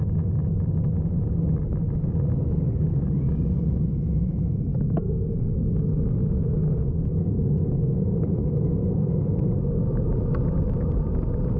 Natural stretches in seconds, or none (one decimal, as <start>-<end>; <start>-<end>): 0.0-11.6